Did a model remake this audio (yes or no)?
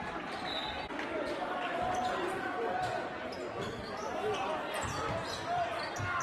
no